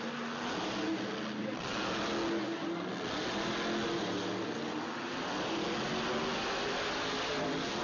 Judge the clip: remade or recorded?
recorded